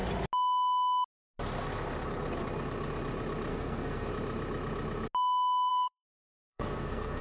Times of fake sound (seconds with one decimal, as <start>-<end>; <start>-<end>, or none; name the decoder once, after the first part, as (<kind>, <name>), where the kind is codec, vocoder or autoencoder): 3.5-4.1 (codec, SNAC); 5.7-7.2